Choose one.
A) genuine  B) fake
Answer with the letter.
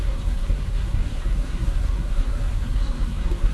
B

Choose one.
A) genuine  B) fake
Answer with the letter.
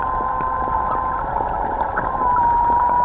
A